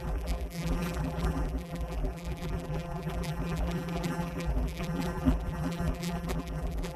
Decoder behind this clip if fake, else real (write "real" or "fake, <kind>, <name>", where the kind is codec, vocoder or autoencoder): fake, vocoder, BigVGAN v2